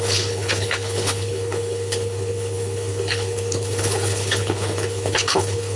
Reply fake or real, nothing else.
fake